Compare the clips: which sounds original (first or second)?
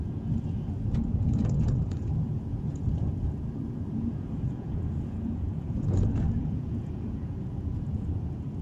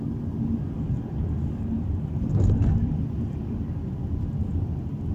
second